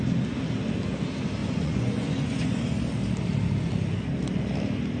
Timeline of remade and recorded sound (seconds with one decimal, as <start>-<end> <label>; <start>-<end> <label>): 0.0-1.4 recorded; 1.4-2.6 remade; 2.6-5.0 recorded